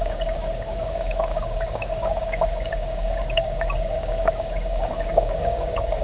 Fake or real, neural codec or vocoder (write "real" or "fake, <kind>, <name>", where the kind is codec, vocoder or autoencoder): fake, codec, DAC